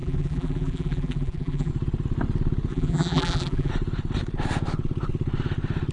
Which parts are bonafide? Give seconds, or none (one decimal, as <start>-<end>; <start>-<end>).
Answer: 1.7-2.7; 3.7-5.9